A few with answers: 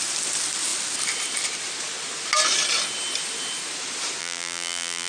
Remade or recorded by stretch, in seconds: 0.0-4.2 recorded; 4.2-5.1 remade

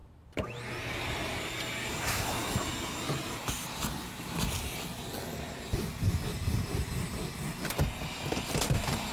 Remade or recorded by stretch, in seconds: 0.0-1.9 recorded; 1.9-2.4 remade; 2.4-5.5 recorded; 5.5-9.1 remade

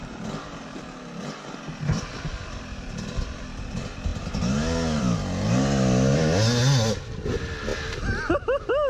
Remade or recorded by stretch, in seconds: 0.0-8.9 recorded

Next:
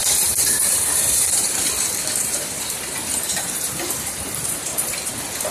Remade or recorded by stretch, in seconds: 0.0-1.7 remade; 1.7-2.2 recorded; 2.2-5.1 remade; 5.1-5.5 recorded